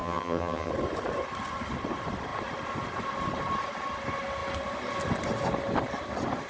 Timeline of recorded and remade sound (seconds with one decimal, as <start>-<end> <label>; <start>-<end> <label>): 0.0-0.7 remade; 0.7-6.5 recorded